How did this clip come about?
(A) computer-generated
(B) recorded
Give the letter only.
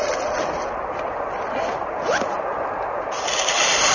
B